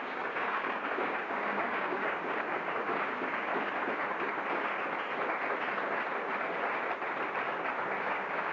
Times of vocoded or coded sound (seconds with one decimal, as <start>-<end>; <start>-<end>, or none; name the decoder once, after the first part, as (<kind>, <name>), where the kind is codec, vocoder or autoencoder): 0.0-3.5 (codec, DAC); 8.1-8.5